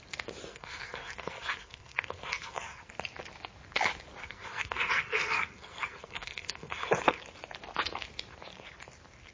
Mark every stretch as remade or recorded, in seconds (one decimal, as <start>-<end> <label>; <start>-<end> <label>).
0.0-0.5 recorded; 0.5-2.9 remade; 2.9-4.2 recorded; 4.2-7.2 remade; 7.2-9.3 recorded